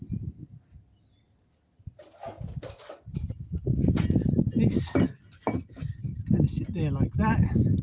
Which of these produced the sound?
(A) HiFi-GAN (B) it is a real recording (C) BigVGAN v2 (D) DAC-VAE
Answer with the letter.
B